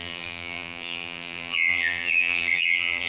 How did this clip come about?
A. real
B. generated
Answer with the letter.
B